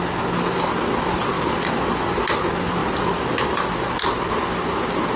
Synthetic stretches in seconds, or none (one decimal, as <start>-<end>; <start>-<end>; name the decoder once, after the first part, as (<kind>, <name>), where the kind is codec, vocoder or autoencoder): none

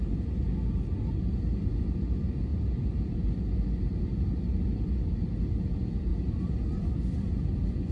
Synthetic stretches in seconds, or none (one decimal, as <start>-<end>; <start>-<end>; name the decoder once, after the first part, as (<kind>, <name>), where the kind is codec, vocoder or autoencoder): 2.5-5.4 (vocoder, BigVGAN v2); 6.1-6.9